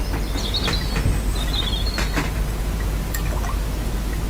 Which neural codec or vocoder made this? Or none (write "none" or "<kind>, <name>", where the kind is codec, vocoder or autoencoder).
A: none